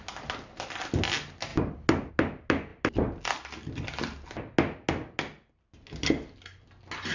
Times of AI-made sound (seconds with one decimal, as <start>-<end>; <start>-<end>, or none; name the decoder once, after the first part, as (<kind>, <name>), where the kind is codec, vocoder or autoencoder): none